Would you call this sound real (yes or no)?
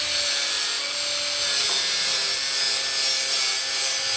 yes